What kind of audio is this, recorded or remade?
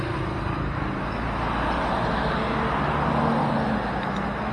recorded